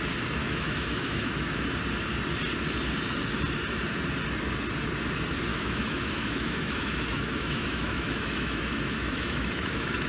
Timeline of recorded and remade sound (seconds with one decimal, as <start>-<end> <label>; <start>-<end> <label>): 0.0-0.4 recorded; 0.4-1.7 remade; 1.7-5.5 recorded; 5.5-10.1 remade